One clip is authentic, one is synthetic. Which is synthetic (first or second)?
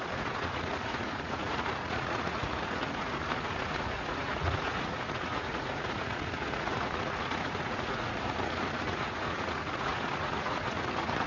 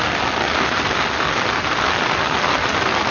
first